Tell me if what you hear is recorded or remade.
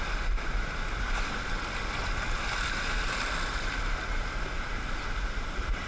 recorded